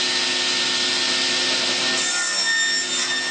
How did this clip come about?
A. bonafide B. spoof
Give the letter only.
A